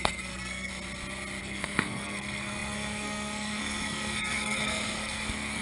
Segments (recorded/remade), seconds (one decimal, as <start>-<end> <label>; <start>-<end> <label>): 0.0-0.7 remade; 0.7-1.4 recorded; 1.4-5.6 remade